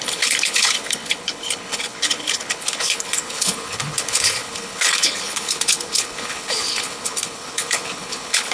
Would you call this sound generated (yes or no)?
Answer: yes